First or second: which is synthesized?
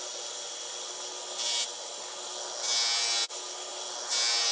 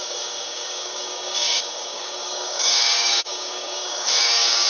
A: second